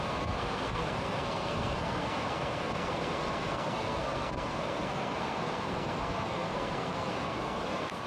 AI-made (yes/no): yes